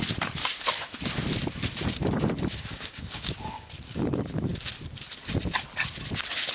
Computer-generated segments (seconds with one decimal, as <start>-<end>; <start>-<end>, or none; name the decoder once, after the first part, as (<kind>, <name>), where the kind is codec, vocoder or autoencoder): 2.5-3.5 (codec, DAC)